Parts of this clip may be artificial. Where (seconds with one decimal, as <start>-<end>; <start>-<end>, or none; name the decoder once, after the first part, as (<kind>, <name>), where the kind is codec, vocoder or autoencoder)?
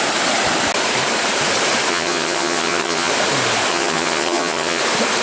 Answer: 1.9-3.1 (vocoder, HiFi-GAN); 3.7-4.8